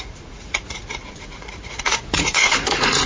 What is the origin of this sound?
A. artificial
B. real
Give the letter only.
A